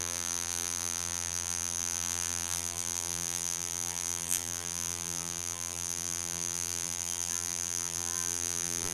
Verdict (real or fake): fake